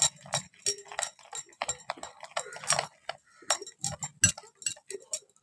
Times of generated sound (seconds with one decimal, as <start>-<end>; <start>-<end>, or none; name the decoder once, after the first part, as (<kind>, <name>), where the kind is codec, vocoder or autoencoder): none